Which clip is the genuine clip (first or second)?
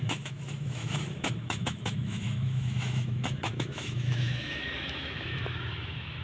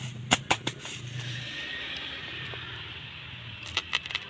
second